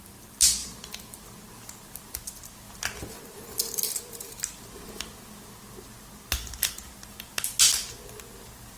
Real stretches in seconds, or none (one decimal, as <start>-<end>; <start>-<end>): 0.0-8.8